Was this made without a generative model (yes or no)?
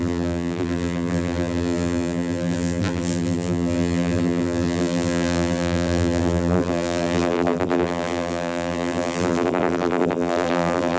no